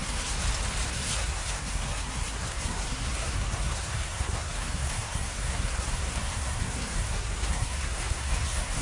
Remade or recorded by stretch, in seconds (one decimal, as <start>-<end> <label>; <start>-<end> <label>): 0.0-0.4 remade; 0.4-0.9 recorded; 0.9-8.8 remade